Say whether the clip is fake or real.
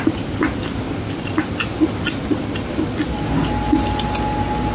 real